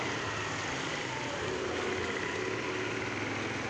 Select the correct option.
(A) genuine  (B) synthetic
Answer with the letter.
A